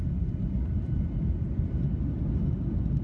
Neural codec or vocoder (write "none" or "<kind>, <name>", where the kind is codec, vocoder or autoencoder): none